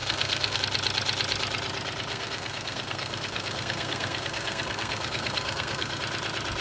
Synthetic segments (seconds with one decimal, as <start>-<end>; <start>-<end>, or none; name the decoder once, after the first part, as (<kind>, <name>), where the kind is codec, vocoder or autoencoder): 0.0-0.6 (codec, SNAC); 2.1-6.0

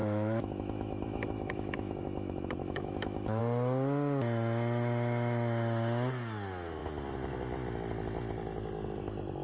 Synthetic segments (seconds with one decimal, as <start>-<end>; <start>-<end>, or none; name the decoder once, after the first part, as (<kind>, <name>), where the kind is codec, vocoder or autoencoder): 0.0-3.4 (autoencoder, DAC-VAE)

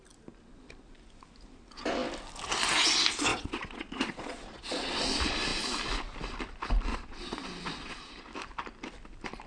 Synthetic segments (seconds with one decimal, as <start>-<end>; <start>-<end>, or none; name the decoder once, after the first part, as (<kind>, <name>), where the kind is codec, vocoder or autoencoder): 3.3-5.0 (vocoder, Vocos); 6.9-8.1

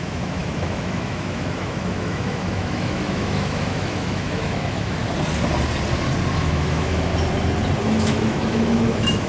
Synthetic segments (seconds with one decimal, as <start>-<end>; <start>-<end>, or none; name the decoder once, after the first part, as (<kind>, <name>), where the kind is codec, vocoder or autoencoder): 0.0-5.0 (autoencoder, DAC-VAE); 6.3-7.1; 7.8-9.3